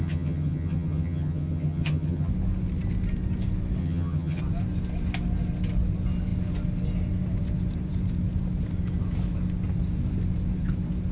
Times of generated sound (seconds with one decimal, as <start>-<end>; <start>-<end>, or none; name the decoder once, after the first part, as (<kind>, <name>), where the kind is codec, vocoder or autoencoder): 0.0-2.3 (vocoder, HiFi-GAN); 3.8-4.4